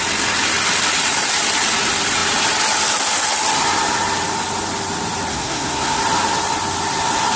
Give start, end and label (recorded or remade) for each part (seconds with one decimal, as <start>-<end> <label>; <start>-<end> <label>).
0.0-5.3 recorded; 5.3-6.0 remade; 6.0-7.4 recorded